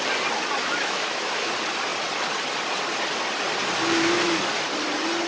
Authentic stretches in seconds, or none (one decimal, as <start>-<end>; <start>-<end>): 0.0-0.6; 1.5-5.3